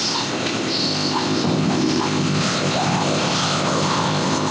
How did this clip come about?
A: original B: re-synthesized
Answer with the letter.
B